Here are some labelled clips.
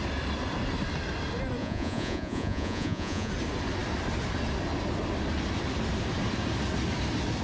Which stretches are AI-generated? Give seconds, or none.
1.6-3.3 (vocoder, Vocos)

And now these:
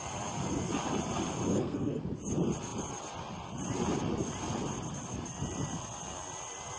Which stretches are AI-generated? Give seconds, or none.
1.5-2.0 (codec, SNAC)

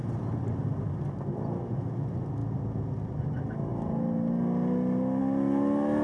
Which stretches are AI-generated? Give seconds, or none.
none

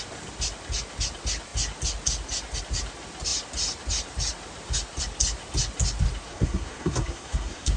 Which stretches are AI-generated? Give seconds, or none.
6.3-7.8 (codec, SNAC)

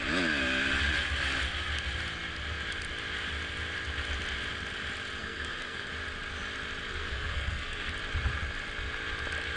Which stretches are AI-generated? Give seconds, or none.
5.2-5.9 (codec, SNAC); 6.9-7.9